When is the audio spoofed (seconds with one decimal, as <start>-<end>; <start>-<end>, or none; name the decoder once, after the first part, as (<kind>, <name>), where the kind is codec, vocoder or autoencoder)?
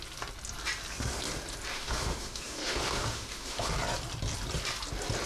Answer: 1.7-3.7 (autoencoder, DAC-VAE)